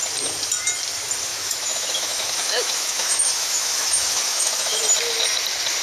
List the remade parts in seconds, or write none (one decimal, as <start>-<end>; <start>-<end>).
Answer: 1.3-4.8